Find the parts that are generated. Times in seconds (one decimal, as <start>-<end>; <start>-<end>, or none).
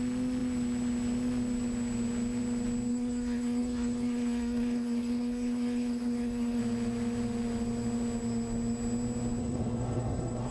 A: 2.9-6.6; 9.4-10.5